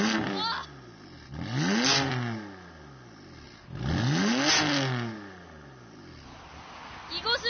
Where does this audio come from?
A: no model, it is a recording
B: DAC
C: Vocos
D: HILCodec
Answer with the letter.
A